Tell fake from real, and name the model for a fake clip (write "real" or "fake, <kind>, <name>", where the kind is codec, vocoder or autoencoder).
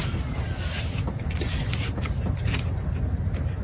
real